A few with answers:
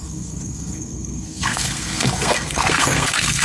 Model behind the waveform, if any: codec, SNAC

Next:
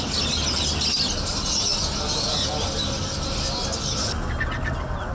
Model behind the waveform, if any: none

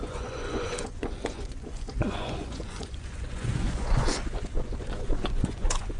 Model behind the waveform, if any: vocoder, Vocos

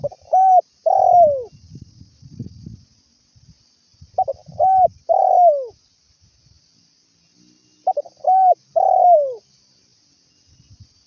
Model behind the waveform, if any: none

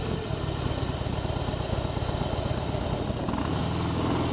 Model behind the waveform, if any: none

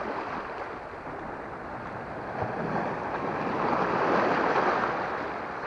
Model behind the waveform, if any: none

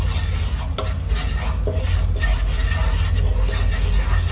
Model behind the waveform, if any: none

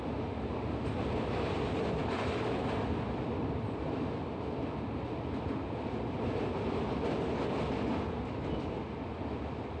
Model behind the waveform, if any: none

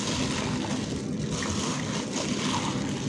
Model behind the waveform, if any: none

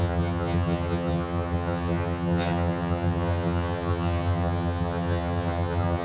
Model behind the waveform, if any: vocoder, HiFi-GAN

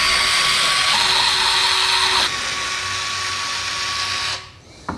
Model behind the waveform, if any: none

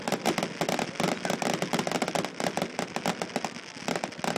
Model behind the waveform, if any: none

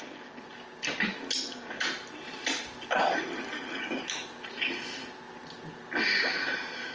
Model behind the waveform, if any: none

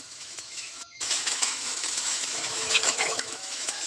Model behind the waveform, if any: autoencoder, DAC-VAE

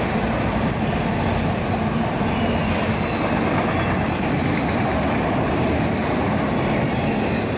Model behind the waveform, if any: none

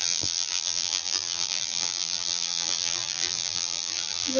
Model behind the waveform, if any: vocoder, BigVGAN v2